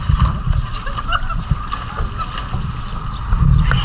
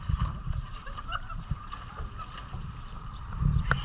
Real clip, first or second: first